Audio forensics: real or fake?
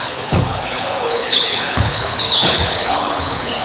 fake